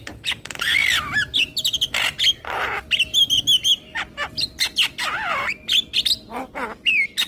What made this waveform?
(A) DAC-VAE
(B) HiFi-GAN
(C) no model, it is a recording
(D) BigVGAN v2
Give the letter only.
C